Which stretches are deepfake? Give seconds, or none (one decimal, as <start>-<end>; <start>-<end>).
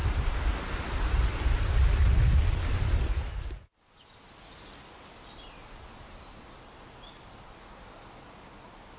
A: none